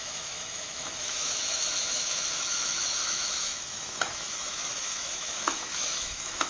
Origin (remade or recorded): remade